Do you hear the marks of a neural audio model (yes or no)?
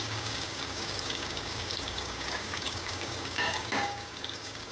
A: yes